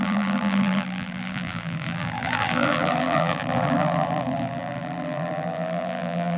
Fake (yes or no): yes